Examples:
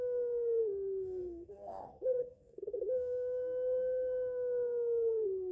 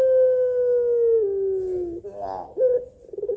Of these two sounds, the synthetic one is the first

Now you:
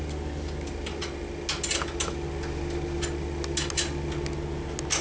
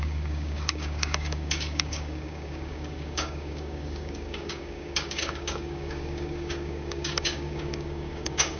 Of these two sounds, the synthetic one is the second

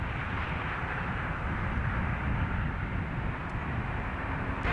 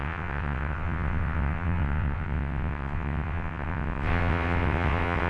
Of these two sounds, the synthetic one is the second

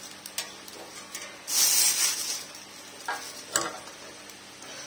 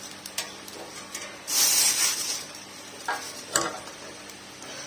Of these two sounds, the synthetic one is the second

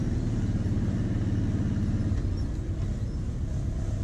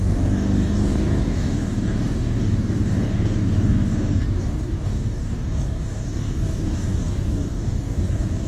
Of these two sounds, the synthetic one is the second